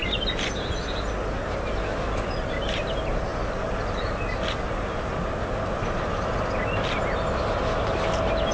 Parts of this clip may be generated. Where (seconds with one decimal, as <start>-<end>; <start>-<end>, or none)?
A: none